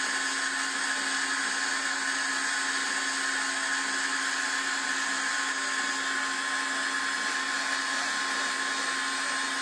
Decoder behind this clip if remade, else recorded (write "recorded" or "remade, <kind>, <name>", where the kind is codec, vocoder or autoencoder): recorded